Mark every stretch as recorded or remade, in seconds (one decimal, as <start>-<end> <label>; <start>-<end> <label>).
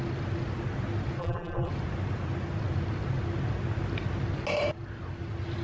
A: 0.0-1.2 recorded; 1.2-1.7 remade; 1.7-5.6 recorded